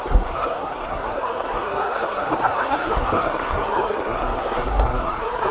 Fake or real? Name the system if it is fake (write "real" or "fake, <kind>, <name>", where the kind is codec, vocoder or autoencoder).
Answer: fake, codec, SNAC